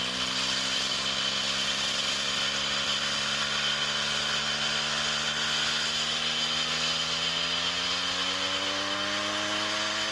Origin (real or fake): real